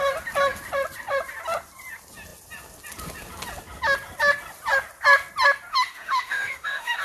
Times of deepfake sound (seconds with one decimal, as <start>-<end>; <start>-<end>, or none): 5.7-7.0